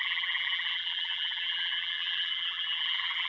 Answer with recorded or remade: remade